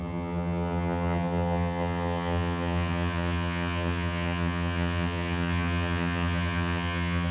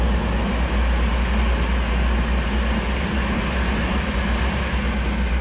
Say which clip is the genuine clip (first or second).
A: second